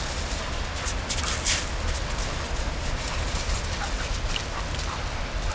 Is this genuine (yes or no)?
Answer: yes